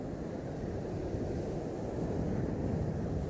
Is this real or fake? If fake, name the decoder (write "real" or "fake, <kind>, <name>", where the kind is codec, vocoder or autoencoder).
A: real